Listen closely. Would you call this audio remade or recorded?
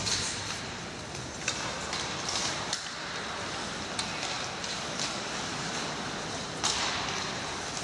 recorded